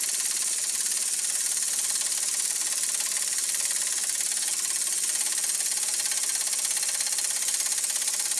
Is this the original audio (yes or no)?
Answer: yes